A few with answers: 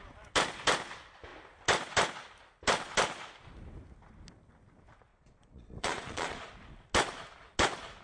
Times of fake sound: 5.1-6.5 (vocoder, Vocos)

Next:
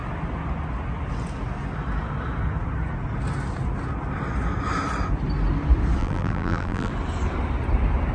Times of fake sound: 6.0-6.9 (vocoder, BigVGAN v2)

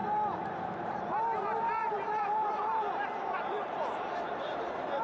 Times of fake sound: 0.0-0.8 (vocoder, BigVGAN v2); 1.8-5.0

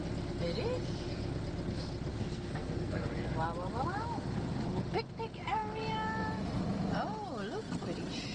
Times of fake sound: 2.1-3.1 (codec, SNAC)

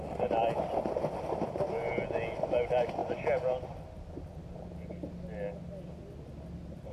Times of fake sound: none

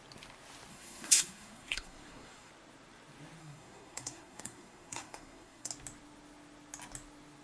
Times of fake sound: 0.7-2.5 (codec, SNAC); 3.4-5.7

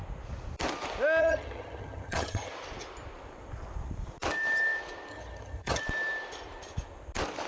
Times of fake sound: 1.2-2.5 (vocoder, HiFi-GAN); 5.1-5.8

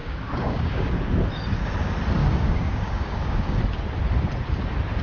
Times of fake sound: 0.0-1.3 (codec, DAC); 2.2-3.6